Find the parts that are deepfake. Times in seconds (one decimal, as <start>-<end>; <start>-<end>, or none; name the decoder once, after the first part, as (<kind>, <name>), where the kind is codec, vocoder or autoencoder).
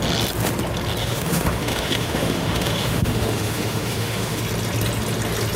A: 1.0-4.4 (autoencoder, DAC-VAE)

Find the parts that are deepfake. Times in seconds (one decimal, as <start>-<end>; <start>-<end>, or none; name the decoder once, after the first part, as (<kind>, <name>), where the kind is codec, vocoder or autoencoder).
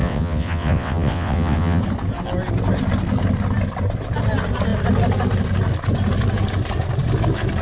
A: 0.0-1.8 (vocoder, WaveNeXt)